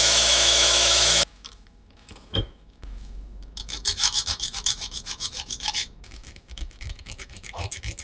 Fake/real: fake